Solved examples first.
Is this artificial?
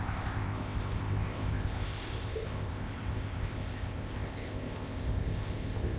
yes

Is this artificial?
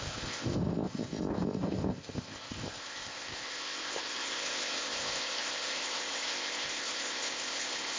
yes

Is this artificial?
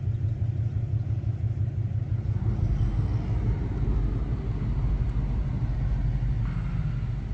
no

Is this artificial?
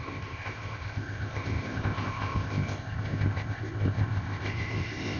yes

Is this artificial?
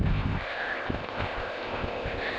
yes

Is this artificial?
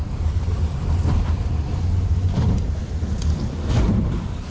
no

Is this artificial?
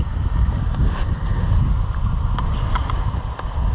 no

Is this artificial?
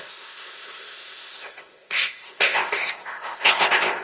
yes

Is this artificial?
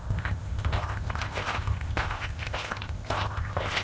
yes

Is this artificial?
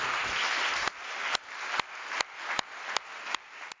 no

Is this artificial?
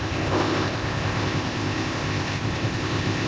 yes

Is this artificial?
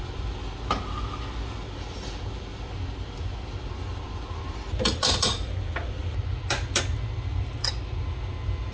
no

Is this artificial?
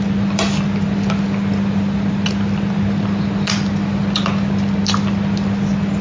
no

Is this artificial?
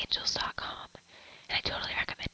no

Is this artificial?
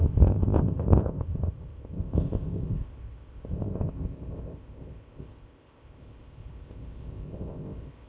yes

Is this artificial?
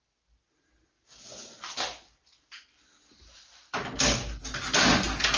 no